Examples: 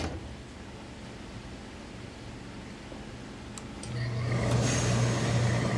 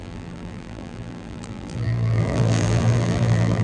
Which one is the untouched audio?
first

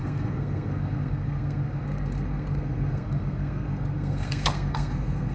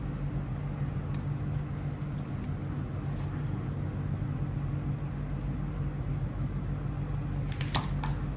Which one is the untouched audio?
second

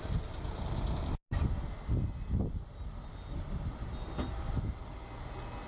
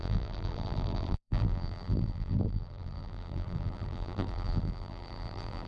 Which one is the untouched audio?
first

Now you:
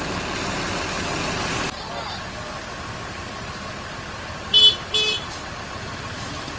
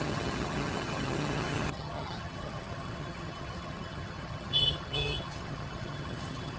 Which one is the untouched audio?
first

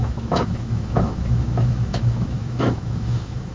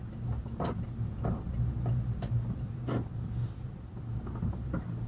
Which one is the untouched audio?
second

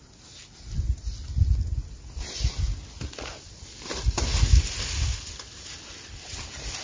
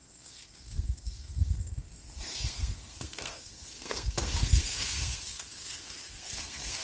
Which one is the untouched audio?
first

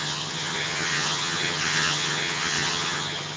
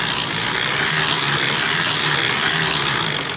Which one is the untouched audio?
second